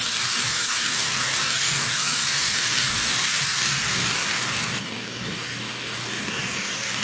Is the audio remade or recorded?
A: remade